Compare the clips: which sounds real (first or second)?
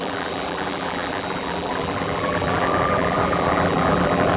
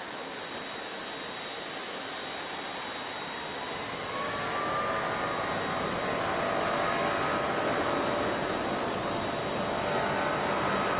second